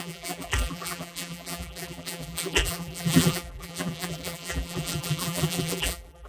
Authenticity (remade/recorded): remade